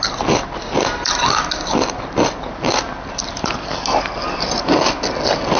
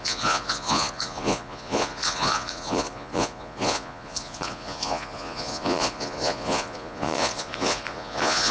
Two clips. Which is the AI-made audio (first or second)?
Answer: second